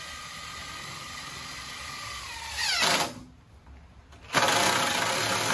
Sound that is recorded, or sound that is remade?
recorded